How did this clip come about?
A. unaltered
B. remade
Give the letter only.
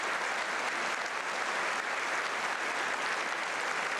A